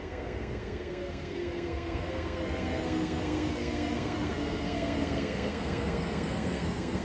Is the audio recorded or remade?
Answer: remade